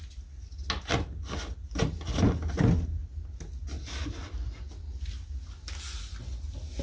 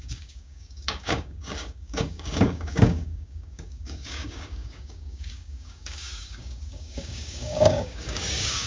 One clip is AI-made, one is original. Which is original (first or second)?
first